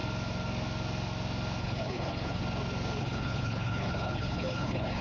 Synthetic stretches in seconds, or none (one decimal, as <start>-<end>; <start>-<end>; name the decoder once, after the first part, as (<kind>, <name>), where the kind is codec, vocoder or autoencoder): 1.6-2.4 (codec, HILCodec); 3.0-5.0